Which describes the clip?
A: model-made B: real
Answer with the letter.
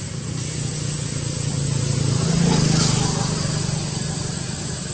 B